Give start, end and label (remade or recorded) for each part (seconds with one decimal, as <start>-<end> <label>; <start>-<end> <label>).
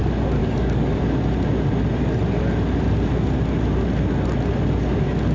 0.0-0.4 recorded; 0.4-1.0 remade; 1.0-5.3 recorded